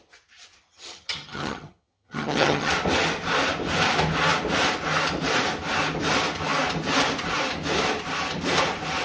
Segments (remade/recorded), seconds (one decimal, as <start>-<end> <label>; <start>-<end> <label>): 0.0-0.7 recorded; 0.7-2.7 remade; 2.7-9.0 recorded